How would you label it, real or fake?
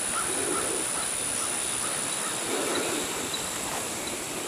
real